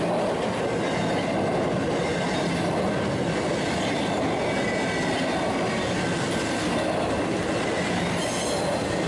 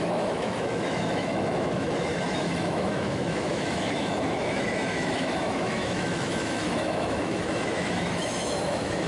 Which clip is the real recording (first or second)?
first